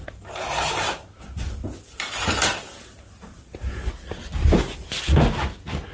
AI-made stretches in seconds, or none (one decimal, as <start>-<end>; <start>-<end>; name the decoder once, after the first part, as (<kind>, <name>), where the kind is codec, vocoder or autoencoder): none